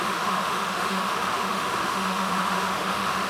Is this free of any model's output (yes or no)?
no